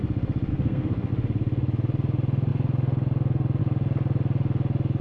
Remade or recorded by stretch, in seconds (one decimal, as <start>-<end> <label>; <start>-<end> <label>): 0.0-0.5 recorded; 0.5-1.1 remade; 1.1-5.0 recorded